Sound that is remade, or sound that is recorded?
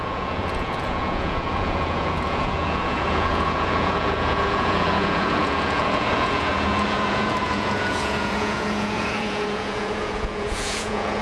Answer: remade